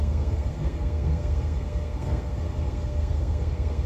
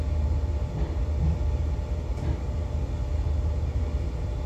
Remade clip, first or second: first